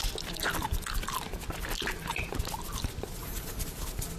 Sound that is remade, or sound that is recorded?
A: recorded